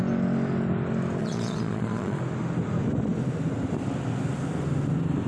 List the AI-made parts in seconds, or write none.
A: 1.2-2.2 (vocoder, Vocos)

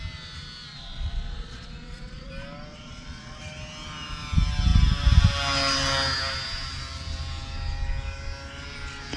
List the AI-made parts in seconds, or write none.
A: 0.7-2.3 (vocoder, Vocos); 2.7-3.4

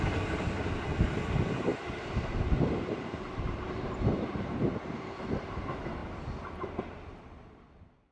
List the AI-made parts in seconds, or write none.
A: 1.7-5.6 (vocoder, BigVGAN v2)

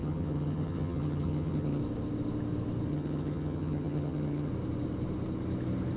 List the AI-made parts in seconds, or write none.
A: 0.0-1.8 (vocoder, HiFi-GAN); 2.9-4.5

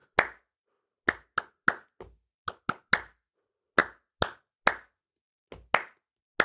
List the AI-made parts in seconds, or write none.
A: none

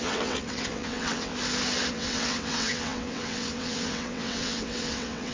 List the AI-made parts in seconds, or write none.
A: 0.0-1.3 (vocoder, WaveNeXt); 1.9-5.3

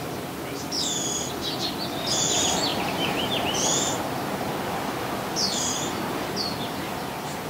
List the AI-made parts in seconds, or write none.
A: 2.7-3.3 (vocoder, BigVGAN v2)